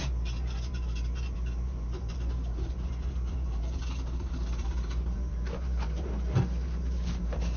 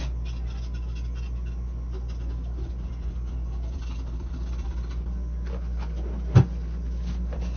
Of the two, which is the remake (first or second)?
first